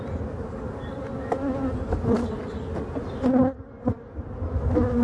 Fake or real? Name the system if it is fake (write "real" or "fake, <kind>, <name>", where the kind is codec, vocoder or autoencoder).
real